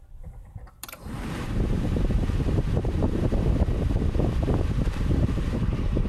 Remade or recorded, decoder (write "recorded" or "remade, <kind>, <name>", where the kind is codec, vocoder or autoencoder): remade, vocoder, BigVGAN v2